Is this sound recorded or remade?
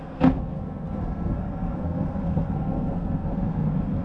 remade